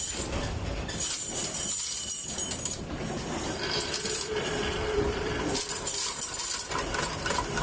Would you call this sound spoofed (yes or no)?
yes